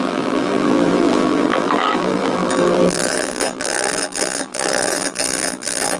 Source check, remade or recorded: remade